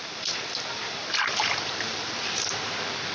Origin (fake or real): fake